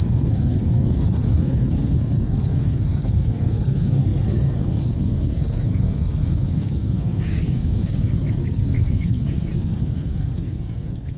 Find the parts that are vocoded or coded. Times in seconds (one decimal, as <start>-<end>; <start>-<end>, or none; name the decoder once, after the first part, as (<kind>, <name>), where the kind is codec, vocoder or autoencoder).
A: 0.0-11.2 (codec, SNAC)